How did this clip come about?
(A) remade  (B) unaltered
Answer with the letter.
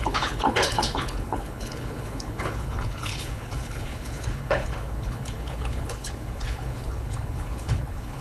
A